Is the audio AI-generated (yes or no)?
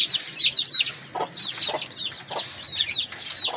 no